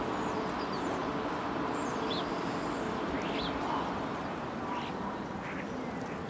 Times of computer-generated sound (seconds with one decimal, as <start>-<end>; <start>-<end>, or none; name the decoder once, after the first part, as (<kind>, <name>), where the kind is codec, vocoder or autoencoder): none